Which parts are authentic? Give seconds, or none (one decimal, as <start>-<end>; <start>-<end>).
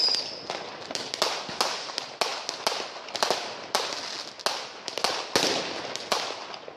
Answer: 0.0-6.8